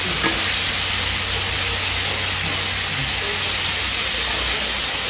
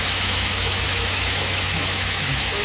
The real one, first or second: first